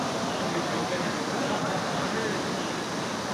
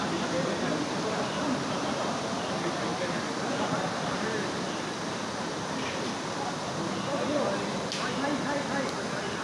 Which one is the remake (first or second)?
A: second